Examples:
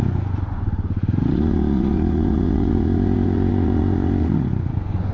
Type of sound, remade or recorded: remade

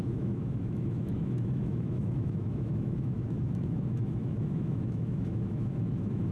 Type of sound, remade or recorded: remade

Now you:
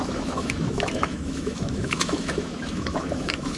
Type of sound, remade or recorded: remade